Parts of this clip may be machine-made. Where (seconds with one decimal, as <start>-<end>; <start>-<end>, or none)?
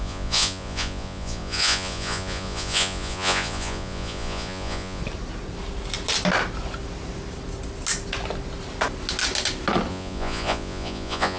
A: 0.0-5.0; 9.9-11.4